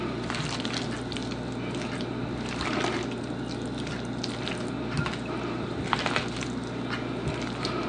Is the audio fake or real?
real